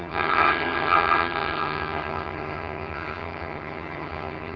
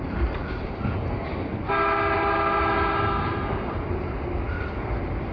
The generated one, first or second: first